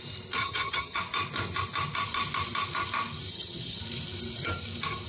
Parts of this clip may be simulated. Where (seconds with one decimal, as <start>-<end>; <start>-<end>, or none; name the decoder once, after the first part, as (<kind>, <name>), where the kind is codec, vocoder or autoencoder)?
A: 0.4-1.0 (vocoder, HiFi-GAN); 3.3-3.8